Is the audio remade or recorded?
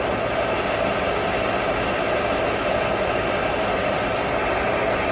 recorded